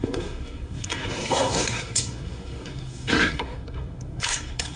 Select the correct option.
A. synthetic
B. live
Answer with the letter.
A